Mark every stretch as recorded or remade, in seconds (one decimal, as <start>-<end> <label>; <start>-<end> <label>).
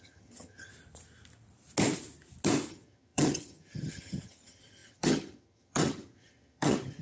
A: 0.0-0.7 remade; 0.7-2.7 recorded; 2.7-7.0 remade